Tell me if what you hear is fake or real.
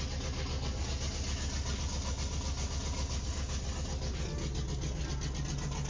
real